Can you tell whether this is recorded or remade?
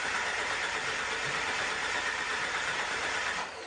remade